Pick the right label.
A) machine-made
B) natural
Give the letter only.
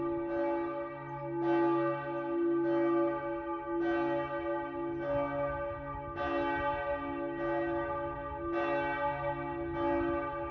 B